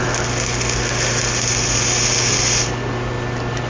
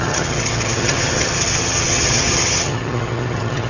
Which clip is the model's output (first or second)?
second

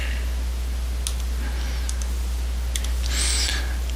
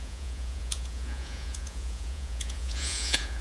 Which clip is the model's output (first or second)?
second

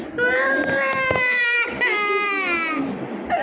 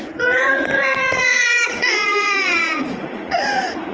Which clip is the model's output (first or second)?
second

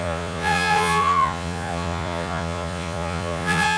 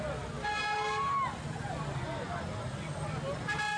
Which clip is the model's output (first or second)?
first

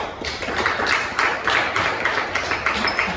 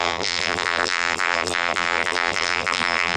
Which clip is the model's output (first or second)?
second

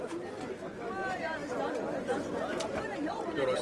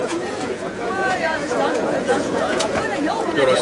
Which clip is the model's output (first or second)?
second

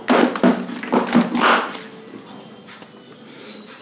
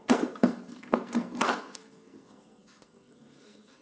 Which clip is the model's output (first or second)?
second